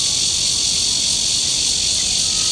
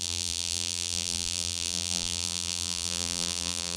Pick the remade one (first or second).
second